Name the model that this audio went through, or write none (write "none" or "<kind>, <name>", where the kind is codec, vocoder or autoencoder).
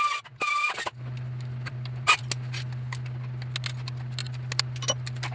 none